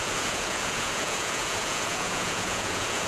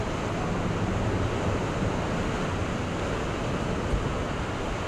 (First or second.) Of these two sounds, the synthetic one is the first